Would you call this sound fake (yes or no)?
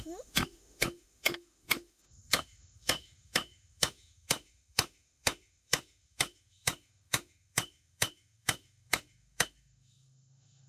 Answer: yes